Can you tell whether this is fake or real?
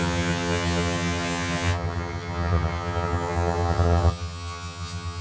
fake